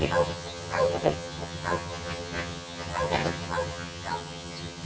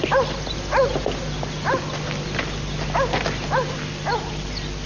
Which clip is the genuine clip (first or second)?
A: second